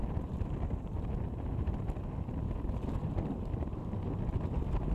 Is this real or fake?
real